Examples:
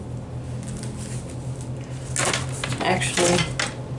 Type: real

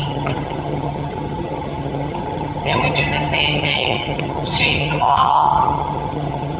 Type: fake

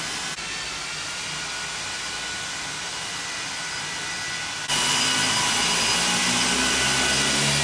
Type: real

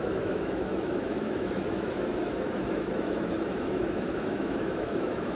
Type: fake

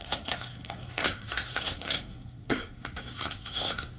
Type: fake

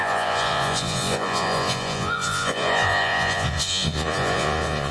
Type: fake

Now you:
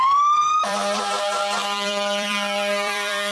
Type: fake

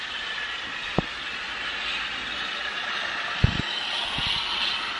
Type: real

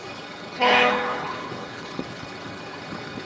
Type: fake